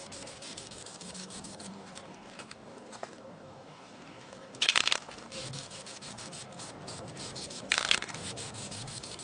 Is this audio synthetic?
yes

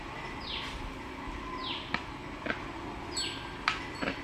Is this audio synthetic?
no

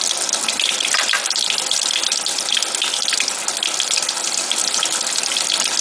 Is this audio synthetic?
no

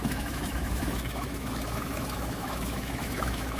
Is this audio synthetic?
yes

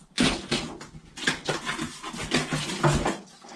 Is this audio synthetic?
no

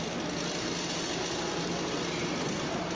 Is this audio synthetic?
no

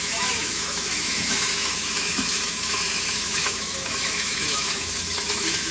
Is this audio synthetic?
yes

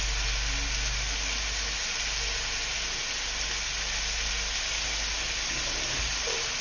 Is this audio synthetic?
no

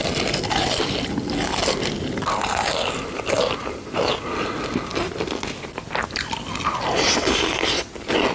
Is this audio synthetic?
no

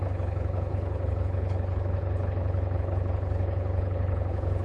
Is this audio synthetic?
yes